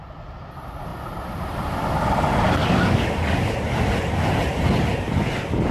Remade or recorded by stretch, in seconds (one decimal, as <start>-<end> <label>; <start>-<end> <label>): 0.0-2.6 recorded; 2.6-3.5 remade; 3.5-5.7 recorded